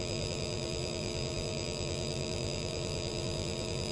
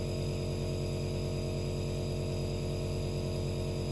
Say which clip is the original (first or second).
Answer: second